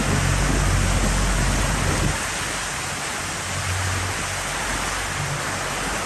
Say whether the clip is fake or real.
real